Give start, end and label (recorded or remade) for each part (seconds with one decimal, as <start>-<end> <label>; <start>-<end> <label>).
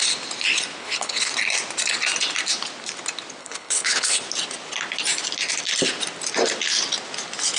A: 0.0-0.8 recorded; 0.8-1.3 remade; 1.3-3.4 recorded; 3.4-4.2 remade; 4.2-7.6 recorded